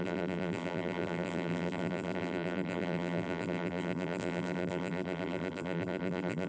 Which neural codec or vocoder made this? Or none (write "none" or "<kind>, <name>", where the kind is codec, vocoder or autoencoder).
vocoder, BigVGAN v2